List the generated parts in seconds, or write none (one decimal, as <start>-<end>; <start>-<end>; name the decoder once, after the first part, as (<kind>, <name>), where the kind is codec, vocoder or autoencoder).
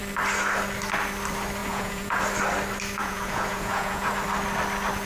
1.6-2.2 (vocoder, Vocos); 3.0-4.1